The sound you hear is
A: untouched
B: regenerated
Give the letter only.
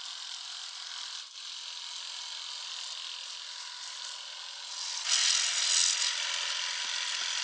A